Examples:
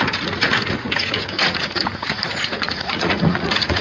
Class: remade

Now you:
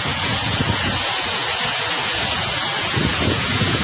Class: remade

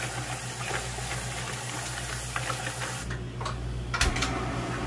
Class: recorded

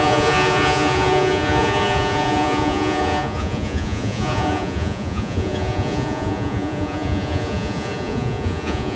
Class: remade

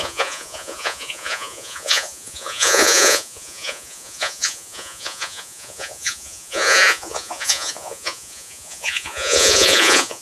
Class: remade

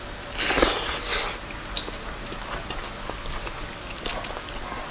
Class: recorded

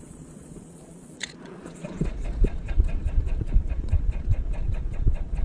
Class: remade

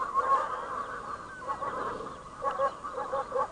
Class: recorded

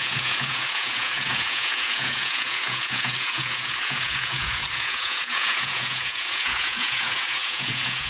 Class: remade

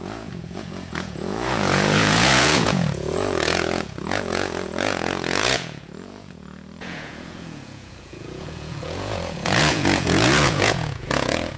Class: remade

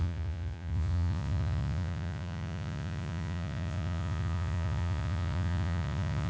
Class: remade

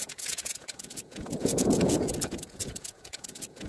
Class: remade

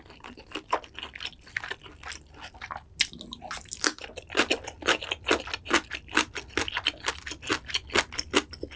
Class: recorded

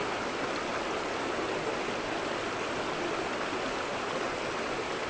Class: recorded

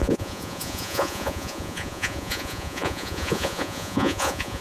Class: remade